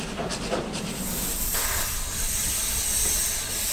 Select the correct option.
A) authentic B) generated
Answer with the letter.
A